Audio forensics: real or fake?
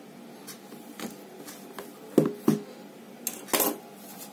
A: real